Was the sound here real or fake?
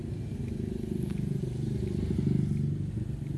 real